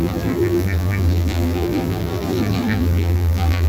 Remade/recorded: remade